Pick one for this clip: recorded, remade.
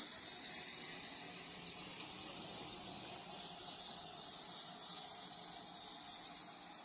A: recorded